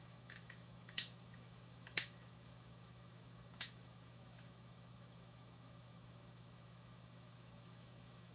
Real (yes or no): no